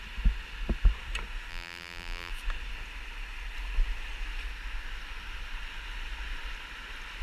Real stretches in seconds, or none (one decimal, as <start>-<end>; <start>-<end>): 0.0-1.5; 2.3-7.2